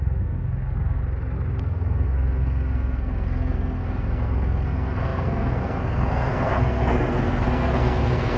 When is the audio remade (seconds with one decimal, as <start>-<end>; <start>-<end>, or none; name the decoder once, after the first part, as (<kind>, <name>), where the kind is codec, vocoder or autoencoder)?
0.0-1.0 (codec, SNAC); 1.6-8.4